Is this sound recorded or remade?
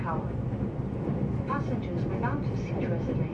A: recorded